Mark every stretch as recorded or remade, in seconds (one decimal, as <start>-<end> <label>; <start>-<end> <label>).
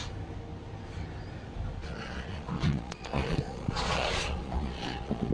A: 0.0-1.8 recorded; 1.8-5.3 remade